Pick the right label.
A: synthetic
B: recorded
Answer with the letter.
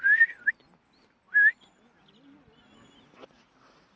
B